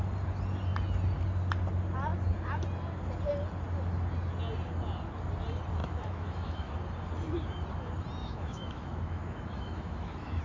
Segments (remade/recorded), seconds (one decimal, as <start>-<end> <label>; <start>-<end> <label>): 0.0-5.8 recorded; 5.8-6.7 remade; 6.7-8.2 recorded; 8.2-10.4 remade